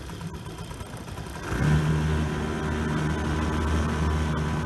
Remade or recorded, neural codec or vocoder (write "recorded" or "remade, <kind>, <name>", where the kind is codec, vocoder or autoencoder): recorded